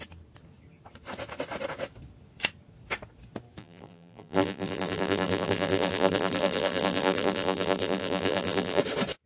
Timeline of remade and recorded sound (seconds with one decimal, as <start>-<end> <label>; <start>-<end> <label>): 0.0-3.6 recorded; 3.6-8.8 remade; 8.8-9.3 recorded